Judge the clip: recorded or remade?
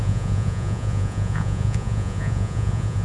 remade